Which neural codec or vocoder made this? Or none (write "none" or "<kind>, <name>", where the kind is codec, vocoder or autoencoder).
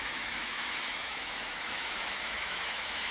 autoencoder, DAC-VAE